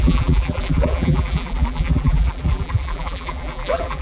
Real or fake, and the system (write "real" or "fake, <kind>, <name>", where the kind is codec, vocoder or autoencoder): fake, vocoder, BigVGAN v2